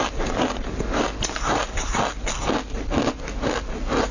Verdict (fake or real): real